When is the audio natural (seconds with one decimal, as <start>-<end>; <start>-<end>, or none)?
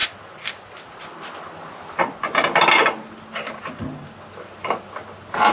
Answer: 0.0-5.5